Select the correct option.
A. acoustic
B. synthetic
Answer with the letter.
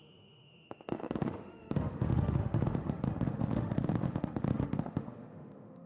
B